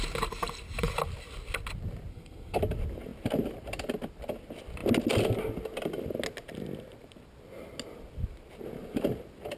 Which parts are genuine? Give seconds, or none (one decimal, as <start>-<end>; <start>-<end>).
0.0-2.1; 2.6-9.6